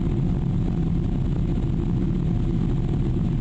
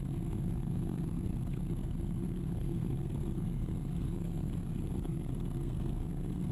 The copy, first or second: second